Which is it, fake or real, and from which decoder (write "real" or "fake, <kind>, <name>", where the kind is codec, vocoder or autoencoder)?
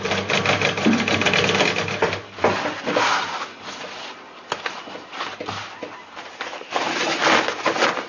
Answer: real